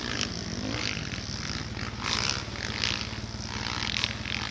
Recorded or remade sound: recorded